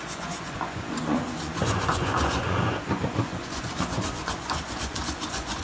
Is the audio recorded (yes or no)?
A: no